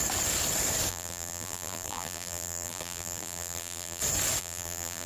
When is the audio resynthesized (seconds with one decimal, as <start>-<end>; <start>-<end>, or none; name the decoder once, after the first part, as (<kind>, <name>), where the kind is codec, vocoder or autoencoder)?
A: 0.9-4.0 (vocoder, BigVGAN v2); 4.4-5.1